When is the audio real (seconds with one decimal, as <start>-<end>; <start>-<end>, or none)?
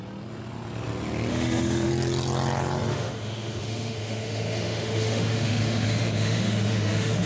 0.0-1.3; 1.9-2.9